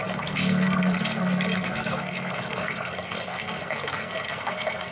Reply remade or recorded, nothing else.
remade